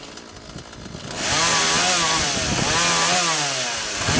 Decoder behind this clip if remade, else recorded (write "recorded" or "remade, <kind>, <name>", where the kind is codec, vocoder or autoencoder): recorded